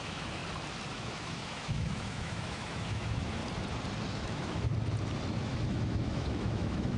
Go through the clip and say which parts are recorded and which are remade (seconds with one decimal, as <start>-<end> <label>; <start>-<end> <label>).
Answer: 0.0-0.4 remade; 0.4-0.9 recorded; 0.9-3.4 remade; 3.4-4.1 recorded; 4.1-4.7 remade; 4.7-5.4 recorded; 5.4-7.0 remade